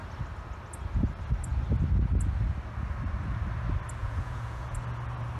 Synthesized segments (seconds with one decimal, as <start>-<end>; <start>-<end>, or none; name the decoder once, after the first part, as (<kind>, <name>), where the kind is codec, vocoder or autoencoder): 4.0-4.7 (vocoder, Vocos)